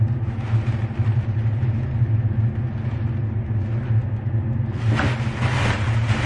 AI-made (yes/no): no